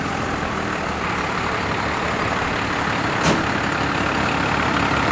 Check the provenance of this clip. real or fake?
real